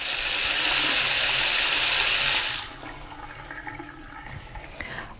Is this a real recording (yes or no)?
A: yes